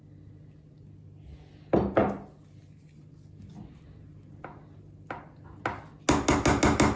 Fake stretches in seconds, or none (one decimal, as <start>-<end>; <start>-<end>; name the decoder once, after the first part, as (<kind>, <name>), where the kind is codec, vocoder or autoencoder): none